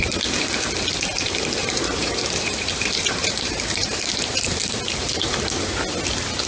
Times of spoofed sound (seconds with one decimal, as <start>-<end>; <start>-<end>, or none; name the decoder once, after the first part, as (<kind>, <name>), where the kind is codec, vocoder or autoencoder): 1.6-5.3 (vocoder, BigVGAN v2)